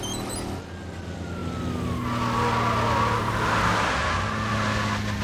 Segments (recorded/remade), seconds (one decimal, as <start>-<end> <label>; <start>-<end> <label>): 0.0-5.2 recorded